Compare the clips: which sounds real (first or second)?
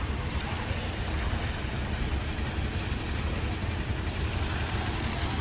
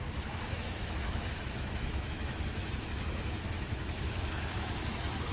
first